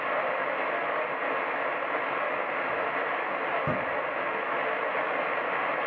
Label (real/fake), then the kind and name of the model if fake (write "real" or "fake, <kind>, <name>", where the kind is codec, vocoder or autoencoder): real